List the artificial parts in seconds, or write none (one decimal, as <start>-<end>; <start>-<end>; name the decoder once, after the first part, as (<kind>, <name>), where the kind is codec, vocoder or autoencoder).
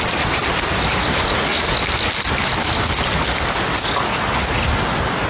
none